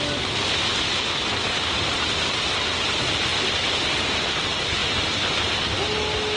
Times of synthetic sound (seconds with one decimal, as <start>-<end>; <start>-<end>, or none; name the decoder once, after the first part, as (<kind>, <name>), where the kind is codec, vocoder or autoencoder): none